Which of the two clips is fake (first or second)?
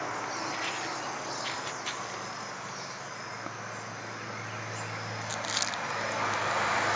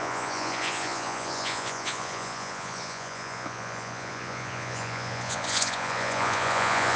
second